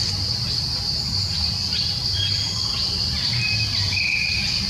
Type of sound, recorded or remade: recorded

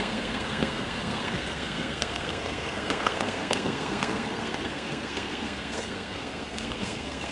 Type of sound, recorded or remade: remade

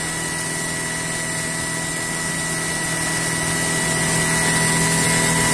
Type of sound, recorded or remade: recorded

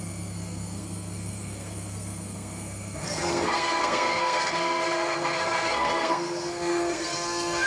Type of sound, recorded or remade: remade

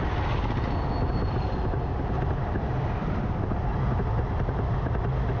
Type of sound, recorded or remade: recorded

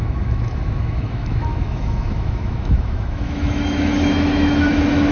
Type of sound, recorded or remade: remade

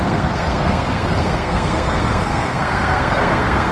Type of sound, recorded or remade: remade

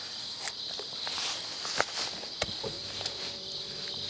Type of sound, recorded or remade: recorded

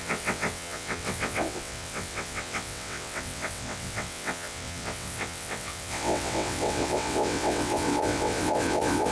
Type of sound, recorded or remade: remade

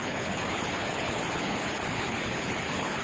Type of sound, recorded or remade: remade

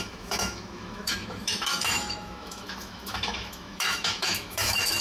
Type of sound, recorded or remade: remade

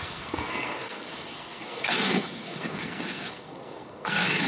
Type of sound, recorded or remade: remade